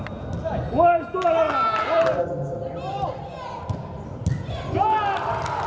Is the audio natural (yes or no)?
yes